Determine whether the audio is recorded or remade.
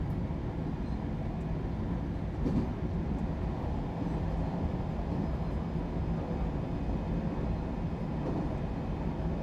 recorded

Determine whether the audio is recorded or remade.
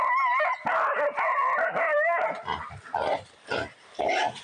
recorded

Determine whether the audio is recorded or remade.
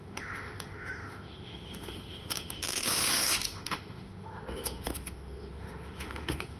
remade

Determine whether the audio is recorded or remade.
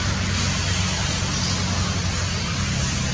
recorded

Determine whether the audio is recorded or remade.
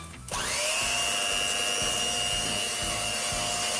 recorded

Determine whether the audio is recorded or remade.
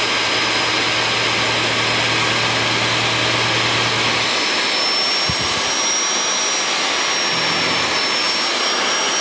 recorded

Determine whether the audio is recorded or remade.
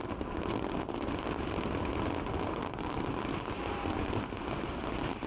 recorded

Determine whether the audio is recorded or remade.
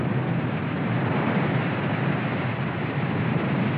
recorded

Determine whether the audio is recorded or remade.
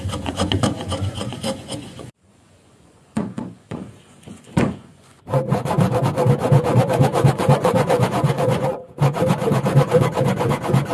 remade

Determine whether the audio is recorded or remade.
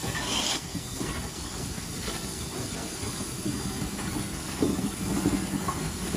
remade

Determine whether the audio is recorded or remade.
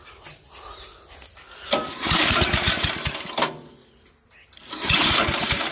recorded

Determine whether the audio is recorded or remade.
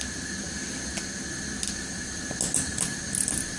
recorded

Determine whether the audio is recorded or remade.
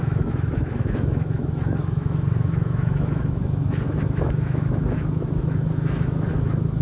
remade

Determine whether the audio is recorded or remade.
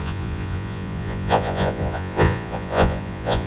remade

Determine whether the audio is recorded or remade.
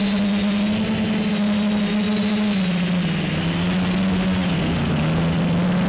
recorded